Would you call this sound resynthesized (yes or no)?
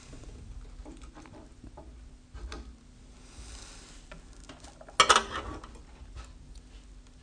no